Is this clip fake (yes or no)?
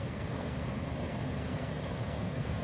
yes